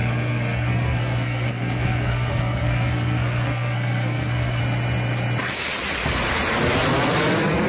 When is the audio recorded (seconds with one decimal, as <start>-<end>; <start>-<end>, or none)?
4.6-7.7